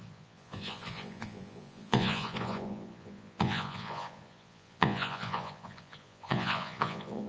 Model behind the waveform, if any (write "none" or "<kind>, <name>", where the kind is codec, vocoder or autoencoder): vocoder, Vocos